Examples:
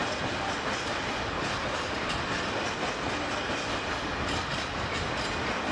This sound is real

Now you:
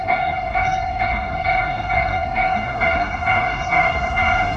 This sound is fake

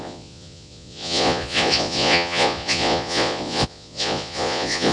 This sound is fake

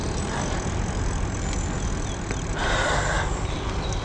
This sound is real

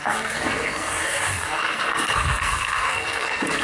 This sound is fake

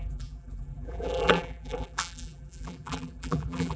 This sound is fake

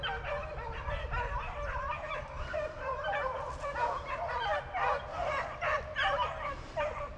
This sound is fake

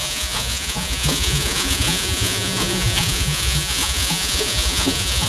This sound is fake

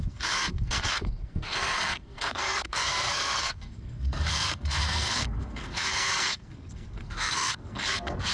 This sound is fake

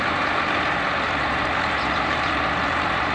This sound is fake